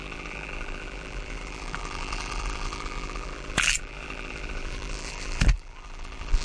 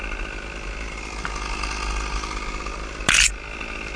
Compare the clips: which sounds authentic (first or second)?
second